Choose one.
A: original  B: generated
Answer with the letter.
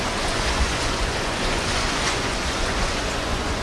B